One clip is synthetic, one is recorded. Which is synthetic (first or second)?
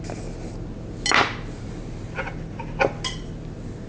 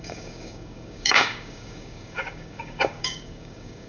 second